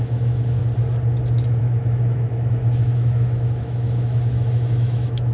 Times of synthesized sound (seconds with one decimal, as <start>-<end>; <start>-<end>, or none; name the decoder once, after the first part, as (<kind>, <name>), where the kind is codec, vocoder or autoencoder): 0.0-0.6 (autoencoder, DAC-VAE); 1.6-5.3